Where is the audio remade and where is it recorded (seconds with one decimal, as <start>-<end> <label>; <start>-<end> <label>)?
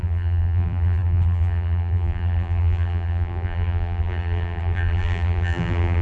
0.0-6.0 remade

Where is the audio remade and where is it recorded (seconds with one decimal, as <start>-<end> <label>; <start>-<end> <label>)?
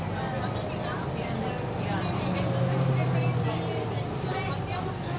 0.0-5.2 recorded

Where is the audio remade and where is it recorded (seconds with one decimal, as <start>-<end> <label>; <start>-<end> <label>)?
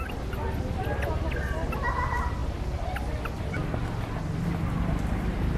0.0-5.6 recorded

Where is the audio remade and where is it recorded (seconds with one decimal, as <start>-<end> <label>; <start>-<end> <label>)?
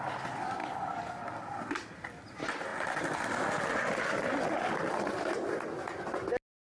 0.0-0.6 recorded; 0.6-1.2 remade; 1.2-6.8 recorded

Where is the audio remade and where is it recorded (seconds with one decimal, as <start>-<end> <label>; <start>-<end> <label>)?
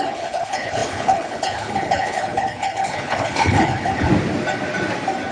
0.0-4.1 remade; 4.1-5.3 recorded